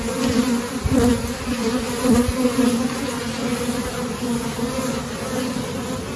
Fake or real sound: real